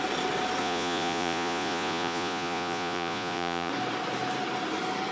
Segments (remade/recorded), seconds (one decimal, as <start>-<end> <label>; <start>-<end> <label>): 0.0-0.6 recorded; 0.6-3.7 remade; 3.7-5.1 recorded